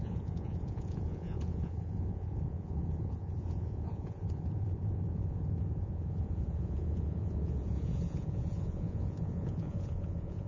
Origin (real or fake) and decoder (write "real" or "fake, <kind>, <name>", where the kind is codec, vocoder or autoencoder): fake, vocoder, Vocos